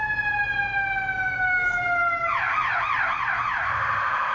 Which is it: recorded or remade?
recorded